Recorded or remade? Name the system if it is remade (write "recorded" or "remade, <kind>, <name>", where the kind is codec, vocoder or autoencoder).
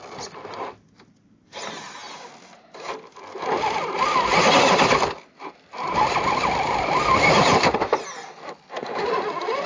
recorded